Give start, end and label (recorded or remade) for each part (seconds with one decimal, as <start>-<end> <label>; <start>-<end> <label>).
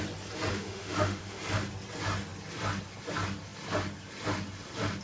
0.0-0.5 recorded; 0.5-1.4 remade; 1.4-5.0 recorded